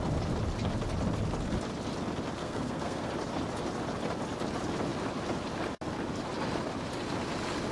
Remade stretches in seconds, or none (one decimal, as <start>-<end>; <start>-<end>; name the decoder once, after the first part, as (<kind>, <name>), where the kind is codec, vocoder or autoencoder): 2.4-3.1 (codec, SNAC)